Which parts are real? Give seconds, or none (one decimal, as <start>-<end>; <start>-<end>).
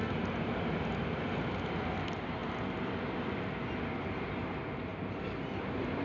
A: 0.0-6.0